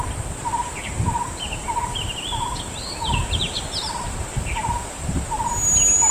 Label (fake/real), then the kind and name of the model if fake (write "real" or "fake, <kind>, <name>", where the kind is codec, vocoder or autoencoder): real